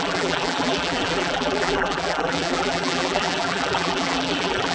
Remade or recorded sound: remade